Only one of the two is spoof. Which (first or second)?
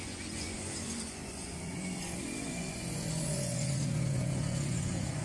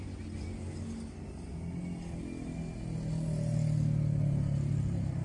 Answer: first